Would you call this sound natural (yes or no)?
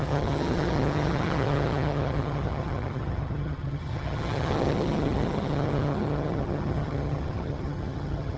no